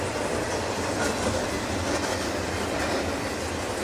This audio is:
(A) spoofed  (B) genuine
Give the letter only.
B